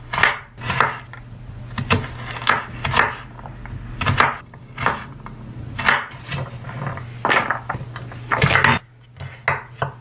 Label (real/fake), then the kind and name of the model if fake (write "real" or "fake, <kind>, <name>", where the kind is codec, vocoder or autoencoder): real